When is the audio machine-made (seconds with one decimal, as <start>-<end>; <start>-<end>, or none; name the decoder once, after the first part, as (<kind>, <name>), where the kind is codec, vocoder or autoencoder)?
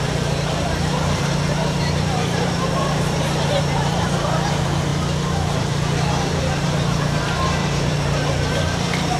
0.0-4.9 (vocoder, BigVGAN v2); 5.6-9.2